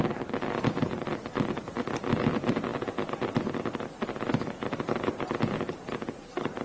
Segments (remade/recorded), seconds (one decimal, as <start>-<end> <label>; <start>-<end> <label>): 0.0-6.6 recorded